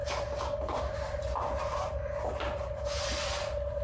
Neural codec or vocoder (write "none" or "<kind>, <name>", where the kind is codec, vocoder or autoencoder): none